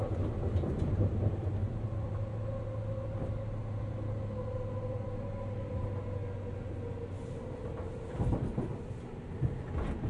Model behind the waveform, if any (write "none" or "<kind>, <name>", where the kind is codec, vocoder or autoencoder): none